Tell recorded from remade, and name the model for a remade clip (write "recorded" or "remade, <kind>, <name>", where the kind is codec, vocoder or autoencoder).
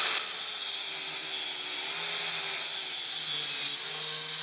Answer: recorded